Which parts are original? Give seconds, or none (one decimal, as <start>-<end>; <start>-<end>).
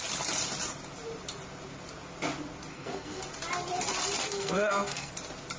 0.0-2.7; 3.2-4.2; 5.1-5.6